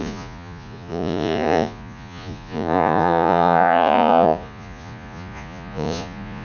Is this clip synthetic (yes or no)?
yes